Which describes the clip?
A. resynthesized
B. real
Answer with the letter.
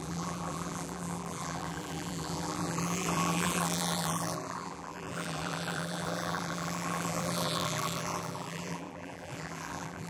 A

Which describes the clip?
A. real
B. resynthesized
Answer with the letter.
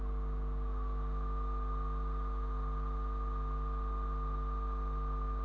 A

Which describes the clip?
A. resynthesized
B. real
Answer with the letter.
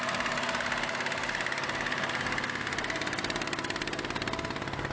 B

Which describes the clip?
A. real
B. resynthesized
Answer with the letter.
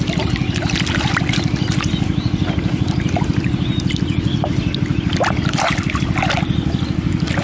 B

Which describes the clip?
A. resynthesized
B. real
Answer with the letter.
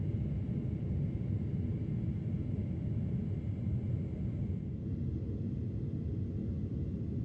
B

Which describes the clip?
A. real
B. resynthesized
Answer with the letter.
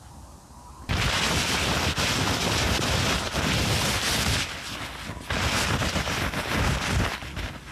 A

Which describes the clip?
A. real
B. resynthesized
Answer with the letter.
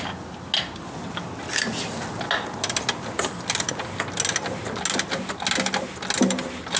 A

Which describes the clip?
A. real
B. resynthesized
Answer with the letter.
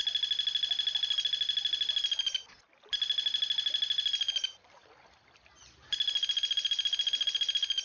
A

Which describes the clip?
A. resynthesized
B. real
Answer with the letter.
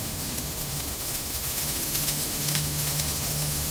A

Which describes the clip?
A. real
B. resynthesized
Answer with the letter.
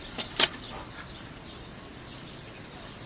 A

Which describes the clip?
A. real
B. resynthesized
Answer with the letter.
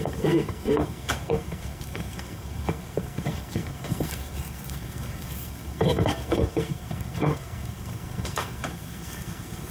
B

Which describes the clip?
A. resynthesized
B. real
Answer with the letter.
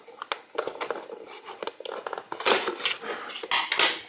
B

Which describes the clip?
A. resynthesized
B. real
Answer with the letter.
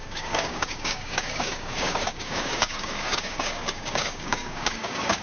A